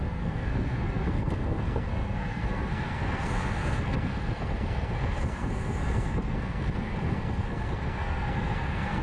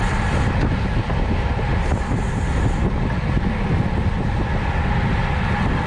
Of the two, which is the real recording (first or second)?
second